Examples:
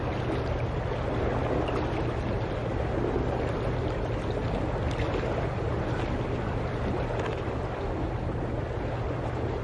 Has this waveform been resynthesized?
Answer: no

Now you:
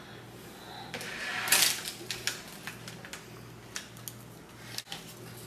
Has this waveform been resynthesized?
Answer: no